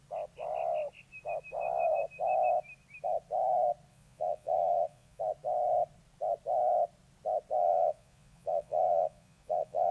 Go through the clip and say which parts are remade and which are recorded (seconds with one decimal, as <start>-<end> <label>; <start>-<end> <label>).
0.0-3.9 recorded; 3.9-5.2 remade; 5.2-7.6 recorded; 7.6-9.9 remade